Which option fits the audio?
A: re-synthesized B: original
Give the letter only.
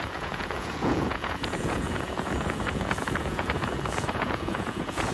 A